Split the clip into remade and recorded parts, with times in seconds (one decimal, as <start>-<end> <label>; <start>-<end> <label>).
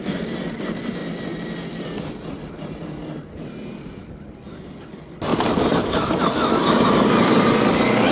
0.0-5.3 recorded; 5.3-6.2 remade; 6.2-8.1 recorded